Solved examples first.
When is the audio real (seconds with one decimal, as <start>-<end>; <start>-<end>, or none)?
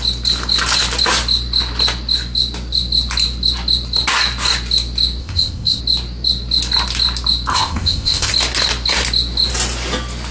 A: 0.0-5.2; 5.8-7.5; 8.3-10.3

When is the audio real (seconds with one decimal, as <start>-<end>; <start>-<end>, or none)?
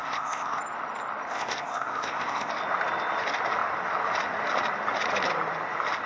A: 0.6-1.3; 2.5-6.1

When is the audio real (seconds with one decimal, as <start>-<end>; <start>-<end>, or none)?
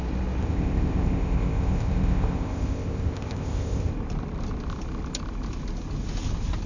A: 0.0-0.4; 3.9-6.7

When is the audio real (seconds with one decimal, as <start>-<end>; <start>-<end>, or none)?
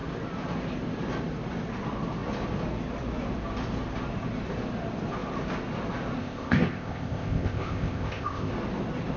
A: 0.0-6.2; 8.5-9.2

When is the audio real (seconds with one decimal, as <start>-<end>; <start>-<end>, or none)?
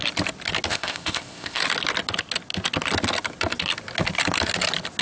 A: 0.0-0.7; 1.6-5.0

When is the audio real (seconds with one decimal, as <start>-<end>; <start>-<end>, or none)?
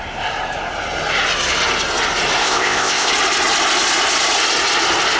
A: 0.0-2.4; 3.1-5.2